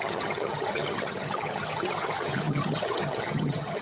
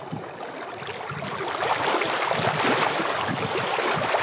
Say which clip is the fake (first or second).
first